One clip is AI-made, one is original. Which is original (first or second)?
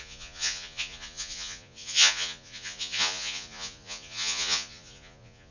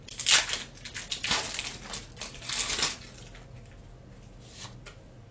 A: second